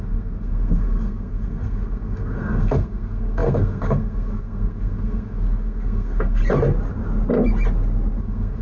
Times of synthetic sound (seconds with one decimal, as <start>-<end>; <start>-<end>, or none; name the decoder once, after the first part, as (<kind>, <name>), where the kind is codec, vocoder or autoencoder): 0.0-6.4 (codec, SNAC); 8.2-8.6